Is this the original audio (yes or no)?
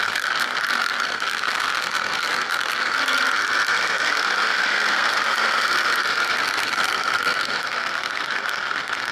no